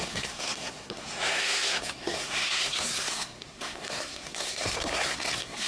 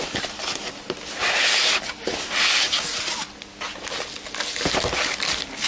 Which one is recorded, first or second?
second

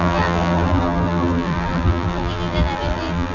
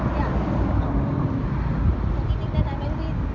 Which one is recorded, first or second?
second